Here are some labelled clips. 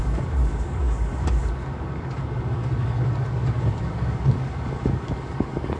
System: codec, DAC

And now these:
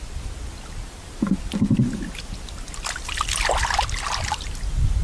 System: none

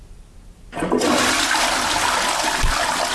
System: none